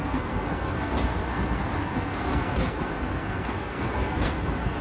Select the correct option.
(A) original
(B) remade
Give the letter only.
B